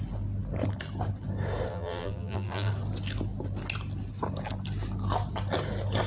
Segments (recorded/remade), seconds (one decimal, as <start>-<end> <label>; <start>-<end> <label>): 0.0-1.7 recorded; 1.7-2.7 remade; 2.7-6.1 recorded